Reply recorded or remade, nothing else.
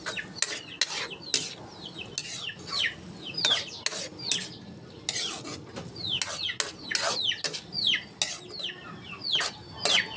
recorded